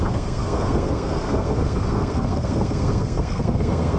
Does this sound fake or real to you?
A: fake